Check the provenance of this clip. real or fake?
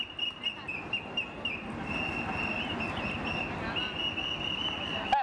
real